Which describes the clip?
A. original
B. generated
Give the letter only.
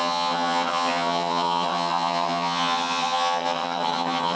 B